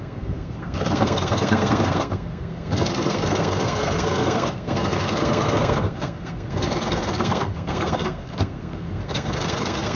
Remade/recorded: remade